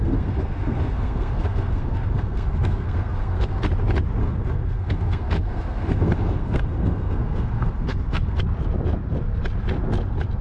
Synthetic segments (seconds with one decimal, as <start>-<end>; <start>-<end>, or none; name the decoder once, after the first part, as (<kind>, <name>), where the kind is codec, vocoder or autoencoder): 0.0-3.6 (codec, SNAC); 4.2-8.4